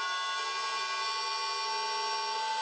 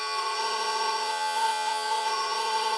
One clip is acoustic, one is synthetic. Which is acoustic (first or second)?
first